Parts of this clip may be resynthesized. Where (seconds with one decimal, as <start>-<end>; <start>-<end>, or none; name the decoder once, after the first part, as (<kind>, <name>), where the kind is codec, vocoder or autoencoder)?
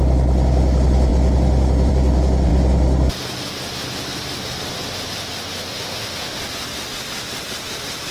5.7-6.4 (autoencoder, DAC-VAE)